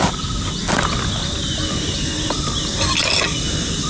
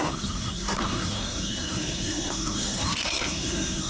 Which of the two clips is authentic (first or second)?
first